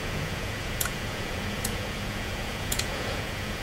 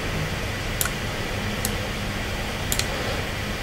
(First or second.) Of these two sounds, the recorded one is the second